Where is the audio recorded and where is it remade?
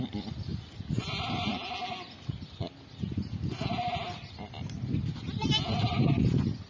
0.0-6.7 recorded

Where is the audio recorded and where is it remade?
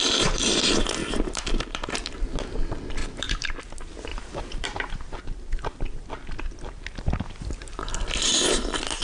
0.0-1.0 recorded; 1.0-1.9 remade; 1.9-3.0 recorded; 3.0-3.6 remade; 3.6-4.1 recorded; 4.1-5.2 remade; 5.2-9.0 recorded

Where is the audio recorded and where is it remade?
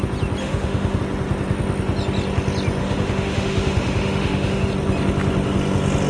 0.0-0.4 recorded; 0.4-1.0 remade; 1.0-2.8 recorded; 2.8-4.7 remade; 4.7-6.1 recorded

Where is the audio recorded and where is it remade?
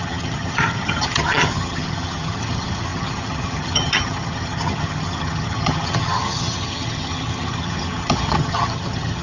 0.0-9.2 remade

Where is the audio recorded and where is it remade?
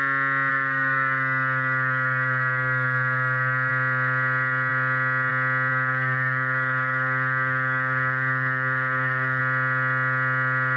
0.0-0.5 recorded; 0.5-3.7 remade; 3.7-5.7 recorded; 5.7-9.4 remade; 9.4-10.8 recorded